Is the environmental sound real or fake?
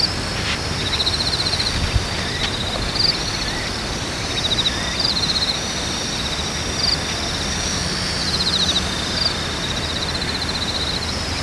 real